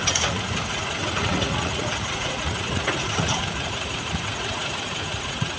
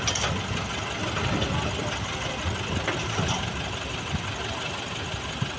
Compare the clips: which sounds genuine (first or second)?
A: second